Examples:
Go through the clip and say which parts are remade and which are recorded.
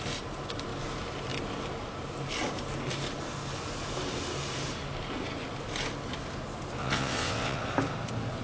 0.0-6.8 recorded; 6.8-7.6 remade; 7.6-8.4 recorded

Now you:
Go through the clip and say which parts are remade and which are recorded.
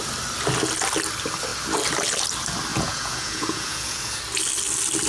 0.0-2.7 recorded; 2.7-4.2 remade; 4.2-5.1 recorded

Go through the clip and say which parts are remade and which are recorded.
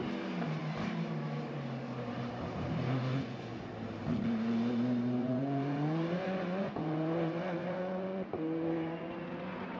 0.0-3.1 recorded; 3.1-3.7 remade; 3.7-5.2 recorded; 5.2-9.8 remade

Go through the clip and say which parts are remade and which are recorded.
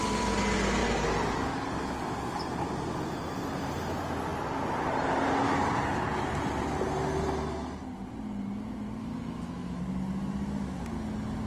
0.0-9.0 recorded; 9.0-9.8 remade; 9.8-11.5 recorded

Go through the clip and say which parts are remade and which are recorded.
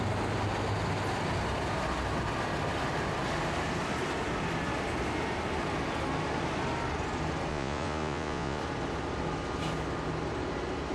0.0-7.5 recorded; 7.5-8.6 remade; 8.6-10.9 recorded